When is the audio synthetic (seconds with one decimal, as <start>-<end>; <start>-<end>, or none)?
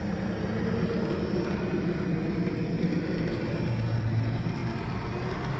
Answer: none